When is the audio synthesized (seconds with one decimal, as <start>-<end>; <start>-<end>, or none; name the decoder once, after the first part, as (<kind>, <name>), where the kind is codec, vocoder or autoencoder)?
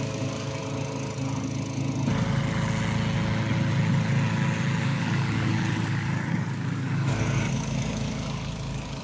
0.0-0.6 (codec, DAC); 4.8-9.0